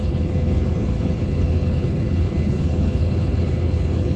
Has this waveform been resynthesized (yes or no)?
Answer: yes